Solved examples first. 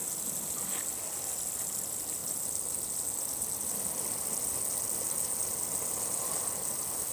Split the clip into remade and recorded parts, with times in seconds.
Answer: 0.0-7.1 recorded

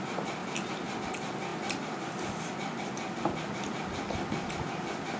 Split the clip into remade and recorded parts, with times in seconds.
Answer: 0.0-5.2 recorded

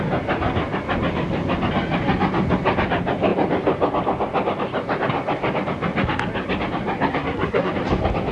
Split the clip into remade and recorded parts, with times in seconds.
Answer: 0.0-7.1 recorded; 7.1-7.7 remade; 7.7-8.3 recorded

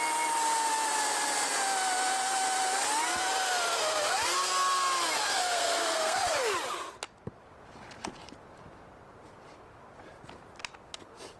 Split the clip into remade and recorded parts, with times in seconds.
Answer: 0.0-5.3 recorded; 5.3-6.2 remade; 6.2-11.4 recorded

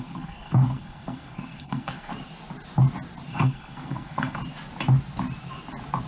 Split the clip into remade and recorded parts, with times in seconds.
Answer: 0.0-2.1 remade; 2.1-3.3 recorded; 3.3-4.4 remade; 4.4-6.1 recorded

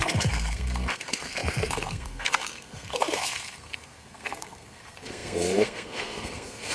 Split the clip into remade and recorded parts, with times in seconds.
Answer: 0.0-6.7 remade

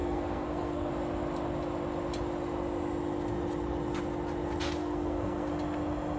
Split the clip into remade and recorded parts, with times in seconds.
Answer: 0.0-0.9 remade; 0.9-4.8 recorded; 4.8-5.5 remade; 5.5-6.2 recorded